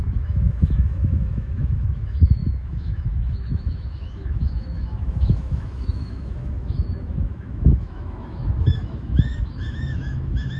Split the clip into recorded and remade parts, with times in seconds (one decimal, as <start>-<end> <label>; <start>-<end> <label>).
0.0-10.6 remade